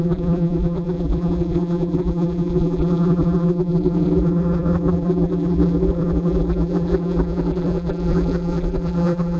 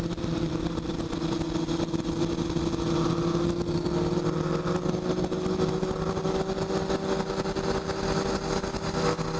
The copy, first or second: first